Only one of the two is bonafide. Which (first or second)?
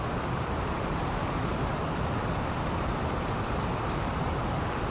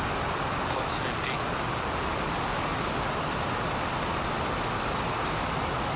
second